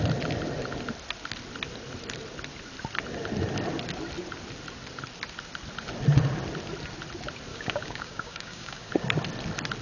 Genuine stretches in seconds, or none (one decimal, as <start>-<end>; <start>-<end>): 0.0-7.5; 8.9-9.8